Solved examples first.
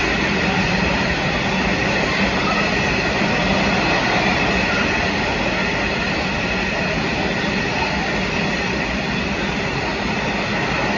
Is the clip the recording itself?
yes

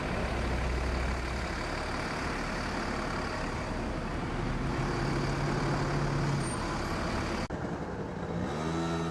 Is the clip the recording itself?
yes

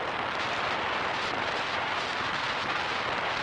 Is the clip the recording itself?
yes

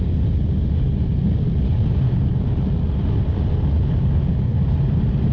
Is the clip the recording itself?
yes